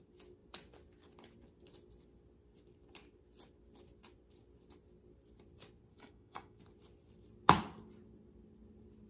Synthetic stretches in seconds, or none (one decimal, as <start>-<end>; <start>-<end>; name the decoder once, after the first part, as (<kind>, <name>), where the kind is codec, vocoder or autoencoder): 5.9-6.6 (codec, DAC)